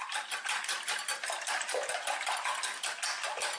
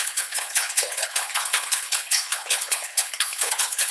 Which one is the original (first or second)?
first